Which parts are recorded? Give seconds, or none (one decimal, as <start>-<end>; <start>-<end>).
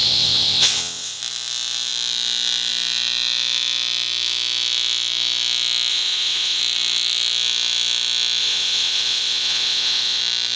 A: 1.2-5.9; 6.6-8.4; 10.2-10.6